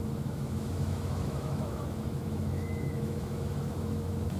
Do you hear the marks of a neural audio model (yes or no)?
yes